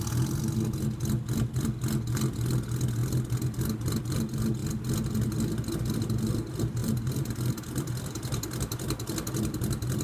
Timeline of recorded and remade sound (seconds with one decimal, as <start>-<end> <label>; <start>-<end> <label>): 0.0-6.8 recorded; 6.8-7.5 remade; 7.5-10.0 recorded